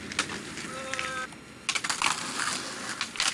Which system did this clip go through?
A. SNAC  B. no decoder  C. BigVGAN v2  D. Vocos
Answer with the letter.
B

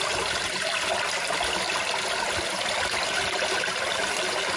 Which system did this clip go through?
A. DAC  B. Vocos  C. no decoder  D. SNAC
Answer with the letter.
C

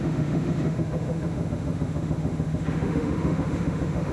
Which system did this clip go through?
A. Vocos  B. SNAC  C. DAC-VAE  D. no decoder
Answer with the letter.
C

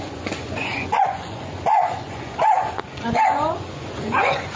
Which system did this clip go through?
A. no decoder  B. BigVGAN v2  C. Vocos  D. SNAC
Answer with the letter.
C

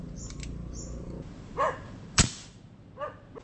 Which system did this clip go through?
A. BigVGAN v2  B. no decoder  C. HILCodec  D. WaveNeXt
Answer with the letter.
B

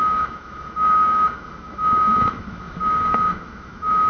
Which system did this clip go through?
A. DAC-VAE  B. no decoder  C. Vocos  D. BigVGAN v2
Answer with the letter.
A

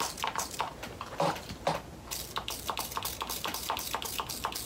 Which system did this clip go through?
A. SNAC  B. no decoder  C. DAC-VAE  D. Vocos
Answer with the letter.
B